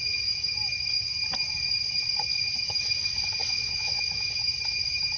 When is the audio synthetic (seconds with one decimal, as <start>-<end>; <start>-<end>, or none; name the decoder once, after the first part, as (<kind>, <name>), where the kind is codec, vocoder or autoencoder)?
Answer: 3.4-4.0 (vocoder, WaveNeXt)